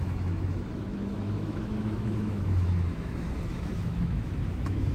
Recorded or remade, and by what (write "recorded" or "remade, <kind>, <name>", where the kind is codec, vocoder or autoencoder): remade, autoencoder, DAC-VAE